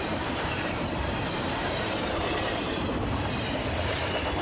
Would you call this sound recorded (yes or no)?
no